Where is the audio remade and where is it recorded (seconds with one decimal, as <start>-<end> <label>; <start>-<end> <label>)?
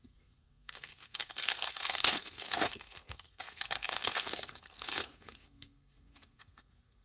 0.0-7.0 remade